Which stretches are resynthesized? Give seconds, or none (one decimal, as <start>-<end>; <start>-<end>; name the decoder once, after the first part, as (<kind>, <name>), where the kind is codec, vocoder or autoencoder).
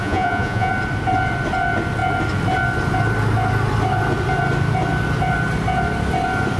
0.0-0.7 (vocoder, Vocos)